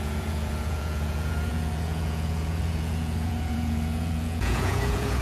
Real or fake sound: fake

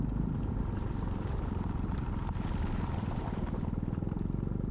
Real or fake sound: real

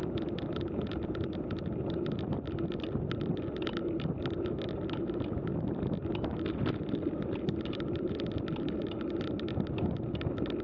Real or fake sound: real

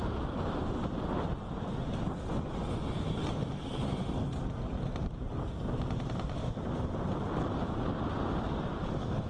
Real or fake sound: real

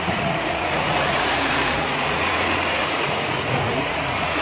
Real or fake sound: fake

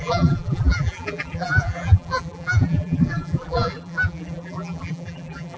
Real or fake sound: fake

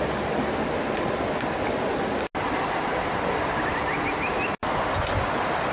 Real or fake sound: real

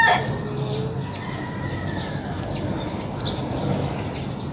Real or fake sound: real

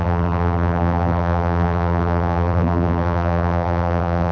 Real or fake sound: fake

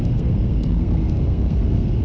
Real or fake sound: fake